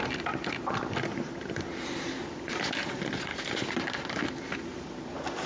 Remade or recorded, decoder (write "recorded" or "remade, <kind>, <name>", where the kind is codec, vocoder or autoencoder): recorded